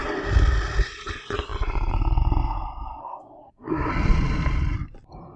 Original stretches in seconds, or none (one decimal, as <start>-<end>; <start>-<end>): 0.0-3.0; 3.9-5.4